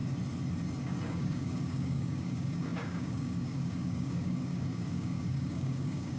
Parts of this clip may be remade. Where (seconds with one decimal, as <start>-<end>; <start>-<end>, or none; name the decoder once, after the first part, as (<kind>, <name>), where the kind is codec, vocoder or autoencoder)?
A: 0.8-6.2 (codec, DAC)